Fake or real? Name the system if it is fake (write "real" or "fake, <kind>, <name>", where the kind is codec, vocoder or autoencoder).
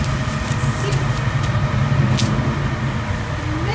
real